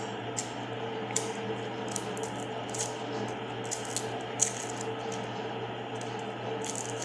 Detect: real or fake real